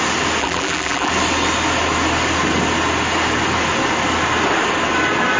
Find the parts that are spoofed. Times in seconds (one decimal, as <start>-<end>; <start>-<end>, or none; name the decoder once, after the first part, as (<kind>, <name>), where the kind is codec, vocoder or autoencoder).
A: 0.4-1.1 (vocoder, BigVGAN v2)